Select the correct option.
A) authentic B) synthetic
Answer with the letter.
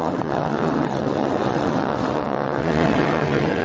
B